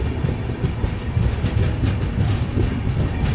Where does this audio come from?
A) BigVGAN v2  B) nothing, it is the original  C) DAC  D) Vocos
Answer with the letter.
B